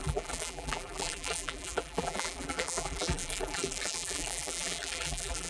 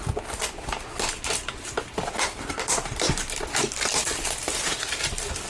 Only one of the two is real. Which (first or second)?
second